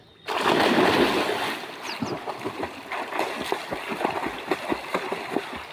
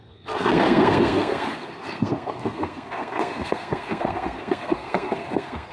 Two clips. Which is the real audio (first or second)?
first